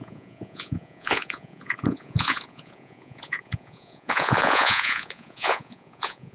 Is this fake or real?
fake